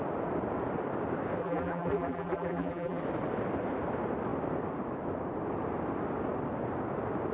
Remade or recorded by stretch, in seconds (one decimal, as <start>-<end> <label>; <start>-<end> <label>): 0.0-1.4 recorded; 1.4-3.0 remade; 3.0-7.3 recorded